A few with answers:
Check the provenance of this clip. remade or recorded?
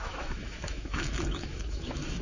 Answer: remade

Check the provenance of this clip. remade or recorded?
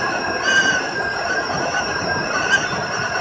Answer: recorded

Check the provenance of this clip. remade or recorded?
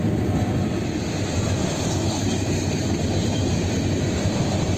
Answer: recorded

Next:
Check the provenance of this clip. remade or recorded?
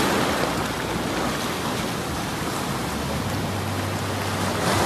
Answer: recorded